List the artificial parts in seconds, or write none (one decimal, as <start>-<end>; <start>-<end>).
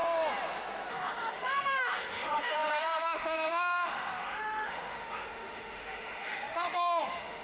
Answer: 0.9-7.4